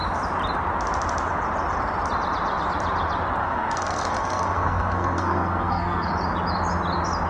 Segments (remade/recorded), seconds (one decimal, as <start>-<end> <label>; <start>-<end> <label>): 0.0-3.4 recorded; 3.4-6.1 remade; 6.1-7.3 recorded